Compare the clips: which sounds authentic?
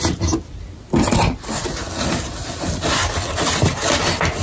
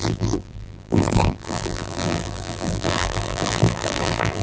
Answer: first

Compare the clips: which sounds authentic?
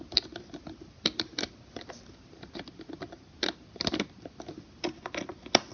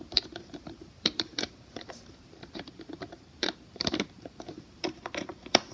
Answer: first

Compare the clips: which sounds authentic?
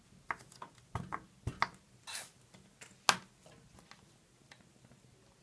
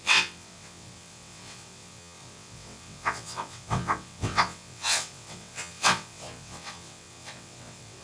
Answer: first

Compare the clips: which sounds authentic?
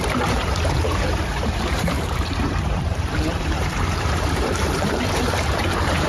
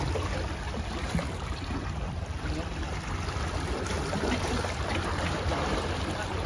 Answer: second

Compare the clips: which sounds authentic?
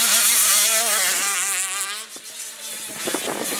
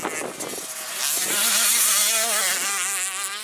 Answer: second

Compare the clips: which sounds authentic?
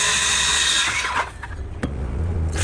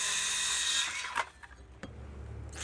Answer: second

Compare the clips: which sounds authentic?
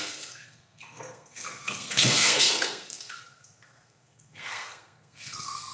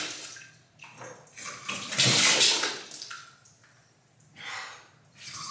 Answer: second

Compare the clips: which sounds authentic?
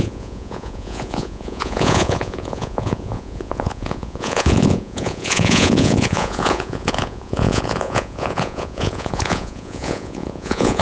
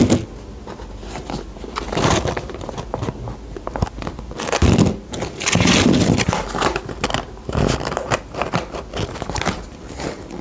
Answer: second